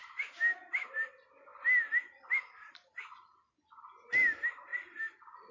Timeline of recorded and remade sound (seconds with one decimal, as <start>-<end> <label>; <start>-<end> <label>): 0.0-5.5 recorded